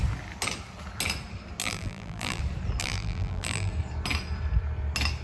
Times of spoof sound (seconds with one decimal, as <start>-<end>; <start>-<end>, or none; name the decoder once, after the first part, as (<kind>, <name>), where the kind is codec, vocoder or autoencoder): 1.6-2.4 (vocoder, BigVGAN v2); 2.8-3.7